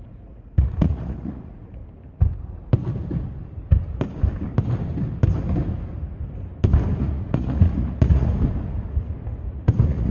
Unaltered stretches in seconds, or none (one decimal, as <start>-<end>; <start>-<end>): 1.8-7.0; 8.3-9.5